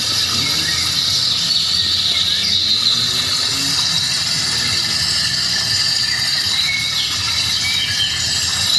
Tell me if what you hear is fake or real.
real